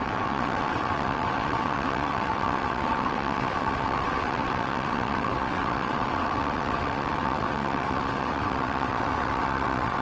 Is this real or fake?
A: fake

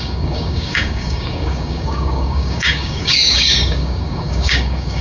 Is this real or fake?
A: fake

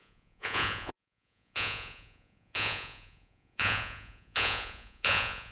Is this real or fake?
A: fake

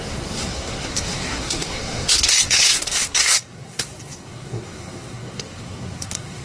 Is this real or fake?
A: fake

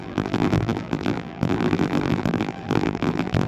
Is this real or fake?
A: fake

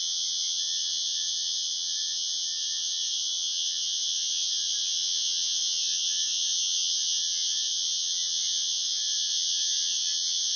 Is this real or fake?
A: fake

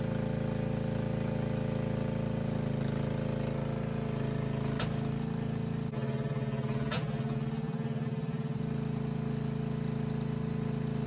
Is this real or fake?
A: real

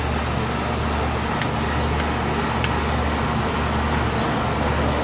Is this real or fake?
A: real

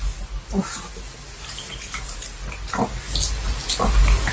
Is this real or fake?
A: real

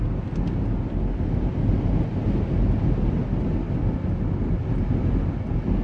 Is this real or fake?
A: real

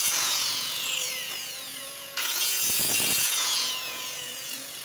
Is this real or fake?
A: fake